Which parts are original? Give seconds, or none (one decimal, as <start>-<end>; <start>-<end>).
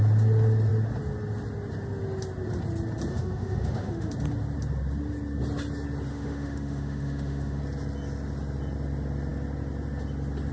0.0-3.1; 4.1-6.1; 7.6-10.5